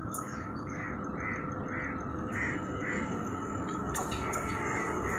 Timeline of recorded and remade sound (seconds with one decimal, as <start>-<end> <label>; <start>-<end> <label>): 0.0-0.9 remade; 0.9-2.1 recorded; 2.1-5.2 remade